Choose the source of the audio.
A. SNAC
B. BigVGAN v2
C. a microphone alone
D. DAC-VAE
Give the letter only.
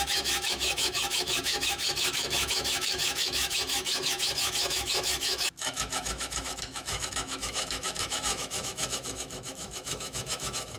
D